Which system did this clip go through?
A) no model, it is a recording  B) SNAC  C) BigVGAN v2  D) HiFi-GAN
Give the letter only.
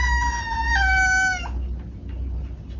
A